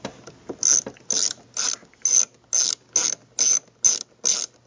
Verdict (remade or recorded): recorded